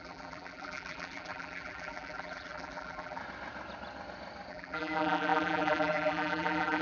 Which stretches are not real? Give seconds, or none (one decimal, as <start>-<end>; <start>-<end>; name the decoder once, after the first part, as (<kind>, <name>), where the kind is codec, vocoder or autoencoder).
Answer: 0.0-3.2 (vocoder, BigVGAN v2); 4.5-6.8